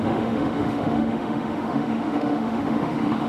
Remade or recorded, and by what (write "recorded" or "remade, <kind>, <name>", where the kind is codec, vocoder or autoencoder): remade, autoencoder, DAC-VAE